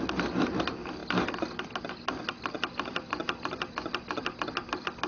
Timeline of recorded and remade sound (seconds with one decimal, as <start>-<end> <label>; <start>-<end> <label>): 0.0-5.1 recorded